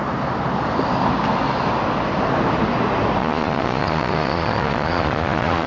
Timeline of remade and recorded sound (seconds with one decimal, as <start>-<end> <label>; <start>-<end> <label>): 0.0-3.2 recorded; 3.2-5.7 remade